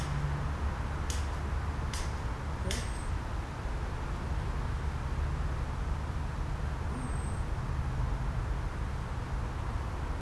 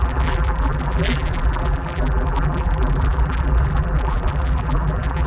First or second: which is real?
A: first